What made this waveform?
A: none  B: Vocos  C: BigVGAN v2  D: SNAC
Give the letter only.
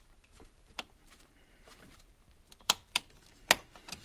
C